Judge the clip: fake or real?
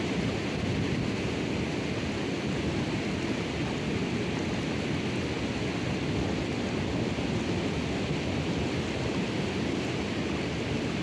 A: real